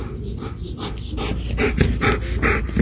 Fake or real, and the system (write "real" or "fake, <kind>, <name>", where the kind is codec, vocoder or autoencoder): real